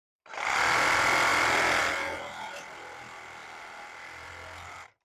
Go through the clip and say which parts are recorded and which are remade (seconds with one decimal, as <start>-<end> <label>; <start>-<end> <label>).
0.0-3.4 recorded; 3.4-4.3 remade; 4.3-5.0 recorded